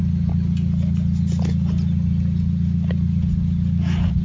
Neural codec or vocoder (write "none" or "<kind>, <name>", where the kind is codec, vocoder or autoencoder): none